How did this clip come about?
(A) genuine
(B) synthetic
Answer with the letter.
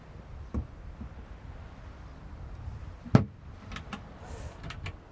A